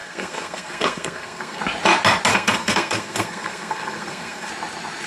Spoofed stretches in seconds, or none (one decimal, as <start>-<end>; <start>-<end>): 0.0-1.6; 2.3-4.5